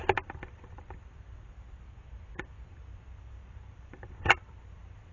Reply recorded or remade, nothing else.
remade